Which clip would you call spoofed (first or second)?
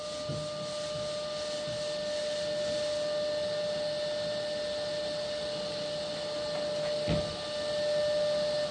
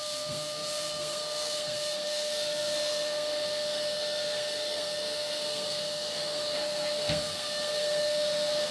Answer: second